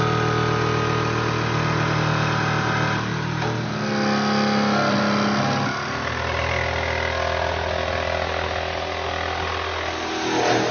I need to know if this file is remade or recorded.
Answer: recorded